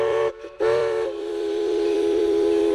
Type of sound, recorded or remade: remade